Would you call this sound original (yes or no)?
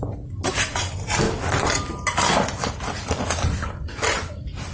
yes